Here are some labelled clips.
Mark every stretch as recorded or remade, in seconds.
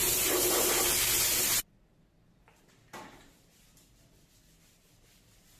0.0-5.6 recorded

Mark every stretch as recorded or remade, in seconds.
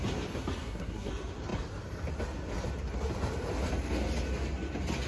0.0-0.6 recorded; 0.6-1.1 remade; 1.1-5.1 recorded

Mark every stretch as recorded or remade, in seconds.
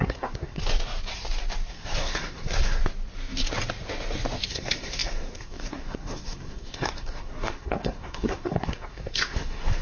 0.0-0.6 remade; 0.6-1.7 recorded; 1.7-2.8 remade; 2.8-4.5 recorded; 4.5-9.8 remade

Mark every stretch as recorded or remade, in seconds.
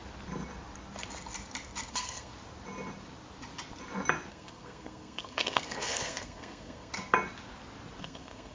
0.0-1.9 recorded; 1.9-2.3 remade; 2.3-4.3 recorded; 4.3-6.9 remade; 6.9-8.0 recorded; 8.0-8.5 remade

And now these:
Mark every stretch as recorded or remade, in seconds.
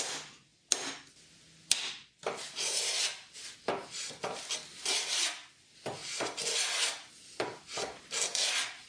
0.0-8.9 recorded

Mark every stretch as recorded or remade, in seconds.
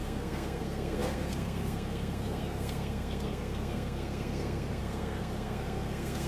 0.0-6.3 remade